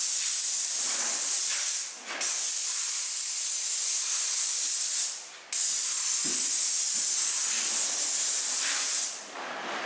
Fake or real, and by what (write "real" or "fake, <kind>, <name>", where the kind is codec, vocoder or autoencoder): real